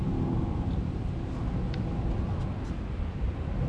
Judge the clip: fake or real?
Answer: real